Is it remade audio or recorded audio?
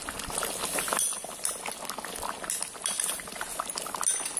recorded